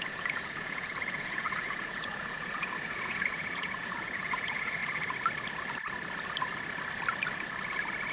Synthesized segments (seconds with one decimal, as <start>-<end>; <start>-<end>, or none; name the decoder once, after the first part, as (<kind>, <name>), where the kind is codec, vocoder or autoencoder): 0.0-4.8 (vocoder, Vocos)